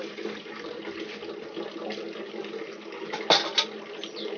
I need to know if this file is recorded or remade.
recorded